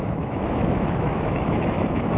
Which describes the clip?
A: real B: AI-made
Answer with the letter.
B